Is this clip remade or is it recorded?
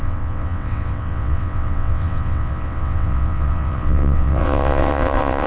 remade